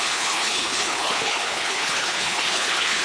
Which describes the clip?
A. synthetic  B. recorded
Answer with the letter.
A